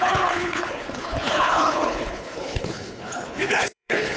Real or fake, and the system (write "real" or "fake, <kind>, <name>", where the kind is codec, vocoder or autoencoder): fake, codec, HILCodec